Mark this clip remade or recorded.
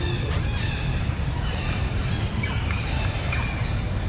recorded